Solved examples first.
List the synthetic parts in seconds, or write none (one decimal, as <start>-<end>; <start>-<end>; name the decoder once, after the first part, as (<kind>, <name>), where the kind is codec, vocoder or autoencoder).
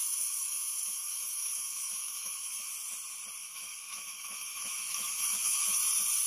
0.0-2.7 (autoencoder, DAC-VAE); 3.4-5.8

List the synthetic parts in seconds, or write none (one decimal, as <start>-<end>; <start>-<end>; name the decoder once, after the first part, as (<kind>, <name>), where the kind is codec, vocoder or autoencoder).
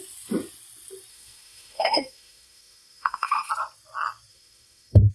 1.1-3.5 (autoencoder, DAC-VAE); 4.3-5.1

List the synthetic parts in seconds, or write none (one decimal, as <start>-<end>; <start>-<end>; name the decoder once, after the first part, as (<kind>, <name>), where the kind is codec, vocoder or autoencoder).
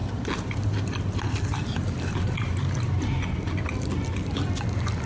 none